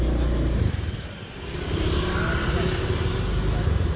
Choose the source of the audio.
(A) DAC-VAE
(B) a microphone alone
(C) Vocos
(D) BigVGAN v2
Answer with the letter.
B